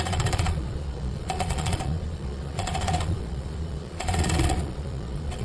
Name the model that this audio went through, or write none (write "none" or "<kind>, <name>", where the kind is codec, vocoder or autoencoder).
vocoder, Vocos